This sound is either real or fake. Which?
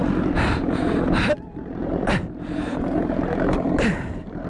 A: fake